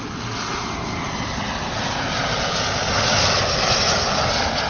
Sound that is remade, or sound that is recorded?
recorded